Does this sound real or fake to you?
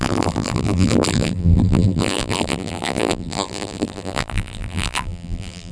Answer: fake